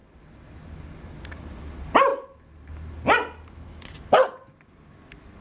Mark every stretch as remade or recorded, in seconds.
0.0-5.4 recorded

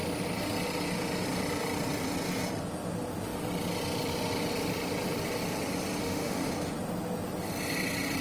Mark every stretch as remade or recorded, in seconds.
0.0-6.0 recorded; 6.0-6.5 remade; 6.5-8.2 recorded

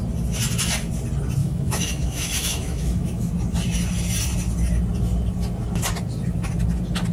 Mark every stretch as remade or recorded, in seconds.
0.0-1.4 recorded; 1.4-3.3 remade; 3.3-7.1 recorded

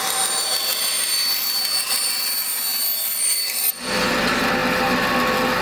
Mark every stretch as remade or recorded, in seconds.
0.0-5.6 recorded